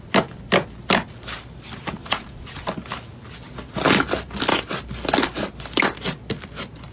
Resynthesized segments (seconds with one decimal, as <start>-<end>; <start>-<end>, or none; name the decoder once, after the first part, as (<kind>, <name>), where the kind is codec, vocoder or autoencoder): 2.0-2.6 (vocoder, Vocos)